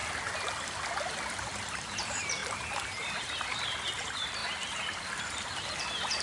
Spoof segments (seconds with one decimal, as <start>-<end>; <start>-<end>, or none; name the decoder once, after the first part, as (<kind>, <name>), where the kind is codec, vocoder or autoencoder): 1.4-6.2 (vocoder, BigVGAN v2)